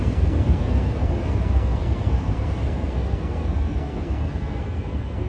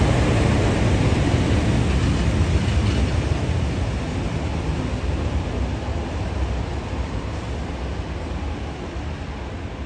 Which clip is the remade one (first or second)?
first